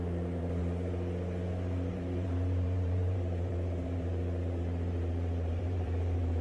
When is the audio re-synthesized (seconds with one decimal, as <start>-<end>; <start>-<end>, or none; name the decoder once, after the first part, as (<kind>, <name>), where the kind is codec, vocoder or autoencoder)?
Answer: 0.0-0.6 (vocoder, BigVGAN v2); 1.9-6.4